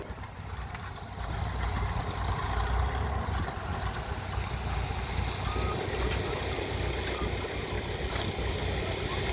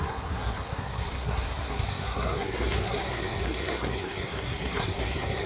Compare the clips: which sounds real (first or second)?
first